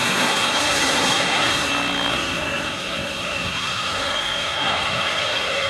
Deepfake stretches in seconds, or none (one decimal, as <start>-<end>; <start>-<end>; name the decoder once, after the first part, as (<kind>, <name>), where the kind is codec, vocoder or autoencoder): 0.0-1.7 (codec, SNAC); 2.1-5.7